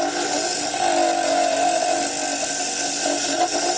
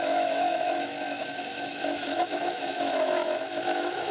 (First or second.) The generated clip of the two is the second